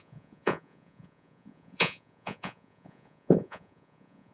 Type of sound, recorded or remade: remade